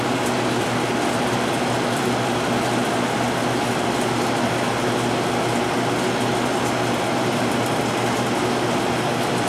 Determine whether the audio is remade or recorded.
recorded